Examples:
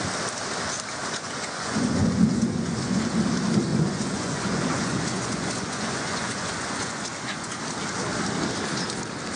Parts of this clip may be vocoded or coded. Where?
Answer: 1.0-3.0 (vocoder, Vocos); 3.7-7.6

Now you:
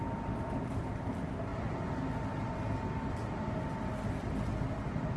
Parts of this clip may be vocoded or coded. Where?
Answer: none